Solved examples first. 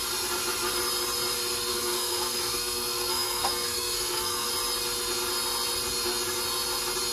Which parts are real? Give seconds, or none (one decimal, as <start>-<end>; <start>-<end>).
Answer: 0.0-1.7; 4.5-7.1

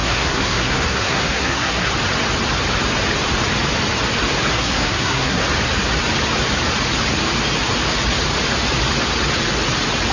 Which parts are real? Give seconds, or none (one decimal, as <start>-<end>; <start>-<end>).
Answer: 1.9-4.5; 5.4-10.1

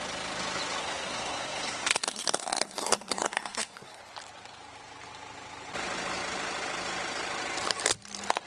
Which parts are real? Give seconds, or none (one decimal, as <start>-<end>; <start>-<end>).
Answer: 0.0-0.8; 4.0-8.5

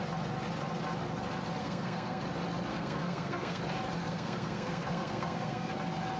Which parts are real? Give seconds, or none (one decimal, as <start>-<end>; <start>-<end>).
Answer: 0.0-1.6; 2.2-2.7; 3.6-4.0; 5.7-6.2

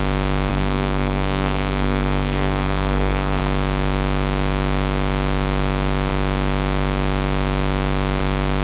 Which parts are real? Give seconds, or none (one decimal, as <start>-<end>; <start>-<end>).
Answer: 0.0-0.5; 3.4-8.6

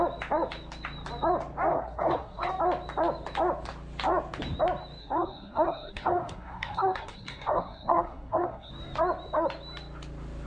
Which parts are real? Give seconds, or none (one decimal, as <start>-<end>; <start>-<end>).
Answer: 0.0-1.7; 2.5-5.0; 8.7-10.5